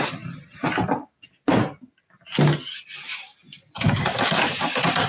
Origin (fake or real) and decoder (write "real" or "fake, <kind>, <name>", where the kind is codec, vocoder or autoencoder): real